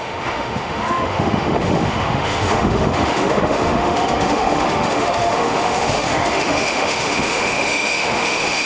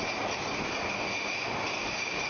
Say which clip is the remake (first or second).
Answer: first